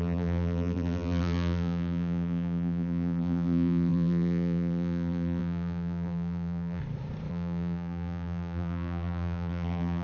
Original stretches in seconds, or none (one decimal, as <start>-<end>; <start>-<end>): 6.8-7.3